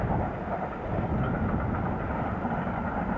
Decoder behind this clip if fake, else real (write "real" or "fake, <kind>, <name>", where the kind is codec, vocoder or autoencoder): real